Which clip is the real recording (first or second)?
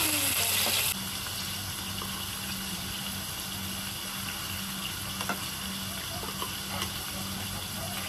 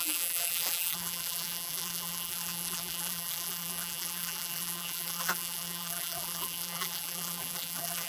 first